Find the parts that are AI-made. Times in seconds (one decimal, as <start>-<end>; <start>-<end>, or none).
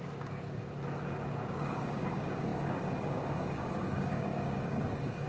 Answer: 0.0-0.6; 1.5-5.3